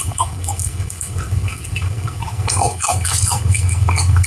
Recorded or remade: remade